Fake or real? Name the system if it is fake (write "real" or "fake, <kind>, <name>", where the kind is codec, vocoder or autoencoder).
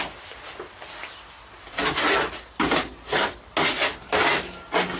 real